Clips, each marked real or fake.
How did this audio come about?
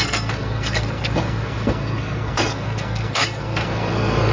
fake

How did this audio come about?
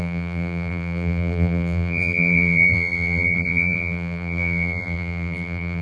fake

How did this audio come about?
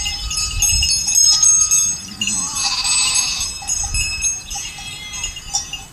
real